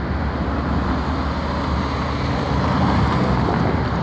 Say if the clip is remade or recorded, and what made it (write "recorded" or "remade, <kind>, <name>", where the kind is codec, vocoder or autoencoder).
recorded